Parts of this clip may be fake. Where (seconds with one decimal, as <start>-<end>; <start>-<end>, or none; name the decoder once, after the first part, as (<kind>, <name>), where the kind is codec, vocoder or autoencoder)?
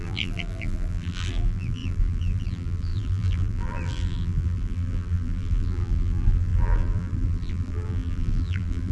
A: 0.0-8.9 (vocoder, BigVGAN v2)